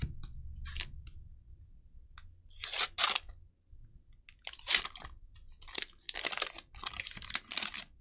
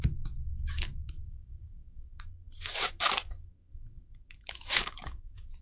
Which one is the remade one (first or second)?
second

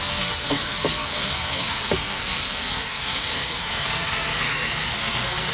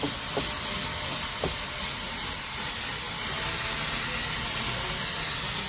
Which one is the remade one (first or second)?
first